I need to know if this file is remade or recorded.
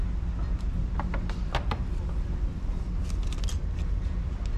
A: recorded